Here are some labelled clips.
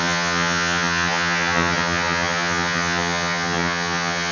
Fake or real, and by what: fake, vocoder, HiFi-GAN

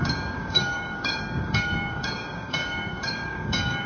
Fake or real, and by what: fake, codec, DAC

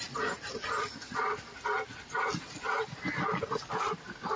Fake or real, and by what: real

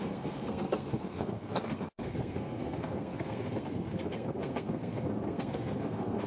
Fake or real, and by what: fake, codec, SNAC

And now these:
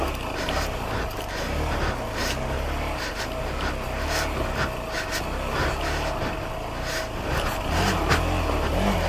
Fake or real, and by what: real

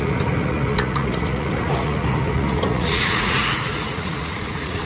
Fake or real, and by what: fake, vocoder, Vocos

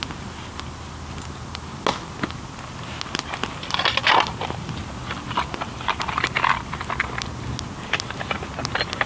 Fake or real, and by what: real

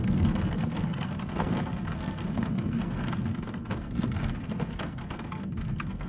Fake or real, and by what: fake, codec, SNAC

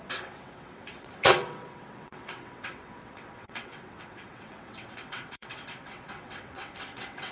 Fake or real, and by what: fake, vocoder, WaveNeXt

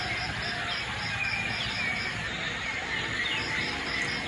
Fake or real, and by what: real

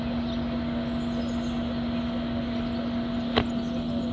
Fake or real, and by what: real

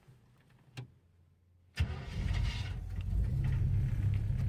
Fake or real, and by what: real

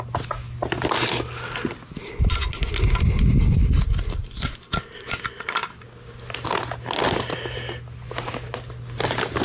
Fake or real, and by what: real